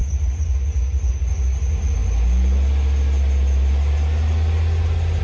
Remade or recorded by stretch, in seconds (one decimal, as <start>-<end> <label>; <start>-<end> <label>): 0.0-5.2 recorded